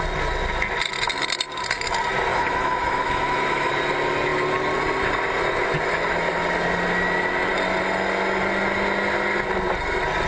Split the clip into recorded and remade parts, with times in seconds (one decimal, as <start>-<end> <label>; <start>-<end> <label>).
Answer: 0.0-2.3 recorded; 2.3-3.7 remade; 3.7-10.3 recorded

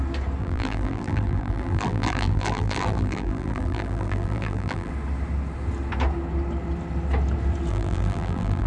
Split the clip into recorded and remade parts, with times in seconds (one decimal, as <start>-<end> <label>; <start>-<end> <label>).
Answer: 0.0-0.4 recorded; 0.4-4.9 remade; 4.9-7.7 recorded; 7.7-8.7 remade